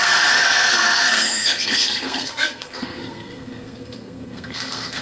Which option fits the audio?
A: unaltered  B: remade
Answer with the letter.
B